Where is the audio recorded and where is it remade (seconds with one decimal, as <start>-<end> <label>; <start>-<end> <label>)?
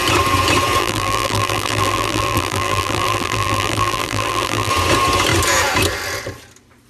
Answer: 0.0-0.8 recorded; 0.8-4.7 remade; 4.7-6.9 recorded